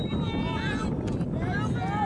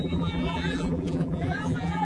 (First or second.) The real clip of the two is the first